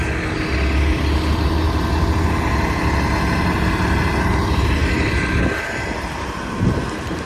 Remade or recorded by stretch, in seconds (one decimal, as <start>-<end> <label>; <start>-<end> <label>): 0.0-7.3 recorded